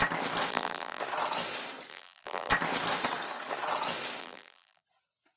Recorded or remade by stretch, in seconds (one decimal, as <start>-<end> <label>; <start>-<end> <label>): 0.0-0.5 recorded; 0.5-1.0 remade; 1.0-1.9 recorded; 1.9-2.5 remade; 2.5-4.2 recorded; 4.2-4.8 remade; 4.8-5.4 recorded